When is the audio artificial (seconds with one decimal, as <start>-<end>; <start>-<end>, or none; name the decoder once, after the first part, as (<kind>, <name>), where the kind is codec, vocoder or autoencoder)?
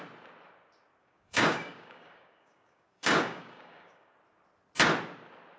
1.0-4.1 (codec, DAC)